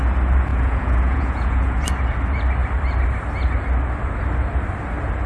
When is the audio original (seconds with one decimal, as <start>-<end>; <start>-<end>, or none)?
0.0-0.5; 1.8-5.3